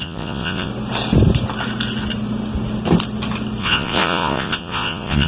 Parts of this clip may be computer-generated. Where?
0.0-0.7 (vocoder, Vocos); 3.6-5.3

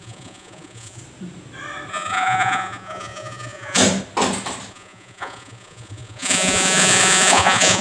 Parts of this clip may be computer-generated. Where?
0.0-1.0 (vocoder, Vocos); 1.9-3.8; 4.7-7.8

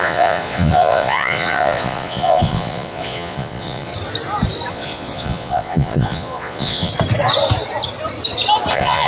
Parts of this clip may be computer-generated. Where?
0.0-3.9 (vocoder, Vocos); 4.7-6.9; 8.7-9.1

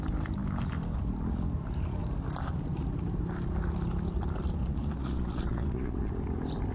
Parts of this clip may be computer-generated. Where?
4.6-6.1 (vocoder, Vocos)